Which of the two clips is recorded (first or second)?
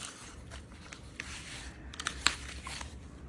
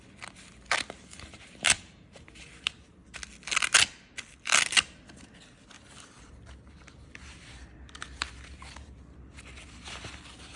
second